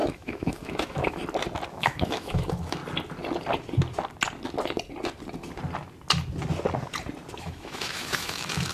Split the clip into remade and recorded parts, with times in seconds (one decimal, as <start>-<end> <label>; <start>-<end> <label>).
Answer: 0.0-1.2 remade; 1.2-1.7 recorded; 1.7-2.8 remade; 2.8-7.4 recorded; 7.4-8.7 remade